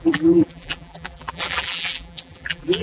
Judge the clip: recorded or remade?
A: remade